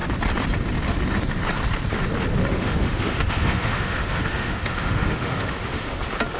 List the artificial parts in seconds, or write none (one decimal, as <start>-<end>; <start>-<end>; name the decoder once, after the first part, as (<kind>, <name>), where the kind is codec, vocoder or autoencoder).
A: 2.5-6.0 (autoencoder, DAC-VAE)